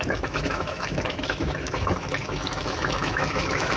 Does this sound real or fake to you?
fake